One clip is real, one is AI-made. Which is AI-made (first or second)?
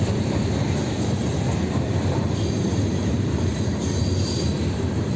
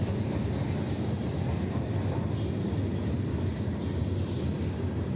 first